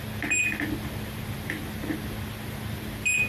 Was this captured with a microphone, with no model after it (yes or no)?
yes